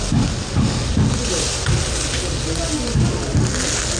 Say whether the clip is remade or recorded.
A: recorded